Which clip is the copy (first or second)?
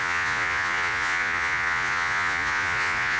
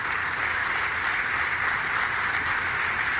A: first